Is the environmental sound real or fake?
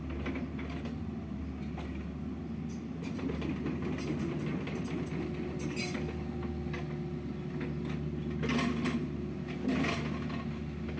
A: real